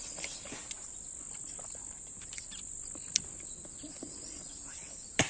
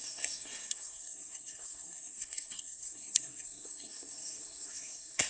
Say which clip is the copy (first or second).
second